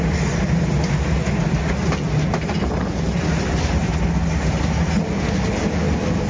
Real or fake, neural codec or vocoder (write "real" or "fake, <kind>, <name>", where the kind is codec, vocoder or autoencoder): real